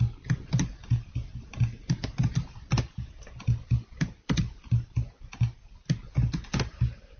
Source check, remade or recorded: recorded